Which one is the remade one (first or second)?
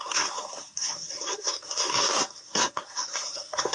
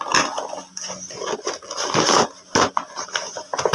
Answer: first